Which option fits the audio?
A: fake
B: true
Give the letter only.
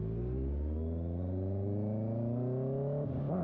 B